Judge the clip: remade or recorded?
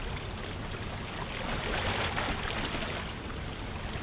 recorded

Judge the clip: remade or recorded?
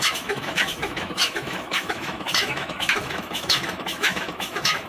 remade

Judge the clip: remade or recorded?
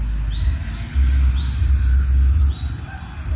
recorded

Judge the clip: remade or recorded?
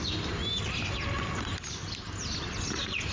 recorded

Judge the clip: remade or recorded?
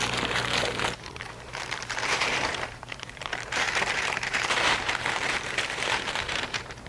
remade